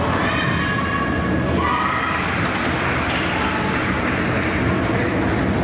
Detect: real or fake fake